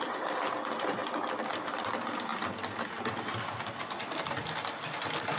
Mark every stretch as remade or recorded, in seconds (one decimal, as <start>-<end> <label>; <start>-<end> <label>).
0.0-5.4 recorded